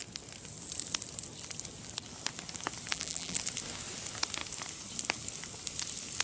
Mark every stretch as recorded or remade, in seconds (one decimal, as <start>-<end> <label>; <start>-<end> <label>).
0.0-2.9 recorded; 2.9-3.4 remade; 3.4-6.2 recorded